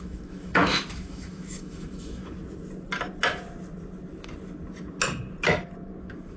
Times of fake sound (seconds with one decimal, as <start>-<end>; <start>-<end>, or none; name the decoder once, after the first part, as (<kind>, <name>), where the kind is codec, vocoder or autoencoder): 0.0-2.2 (autoencoder, DAC-VAE); 6.0-6.4